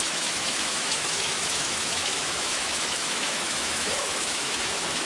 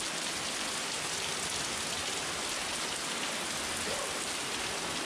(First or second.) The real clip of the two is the second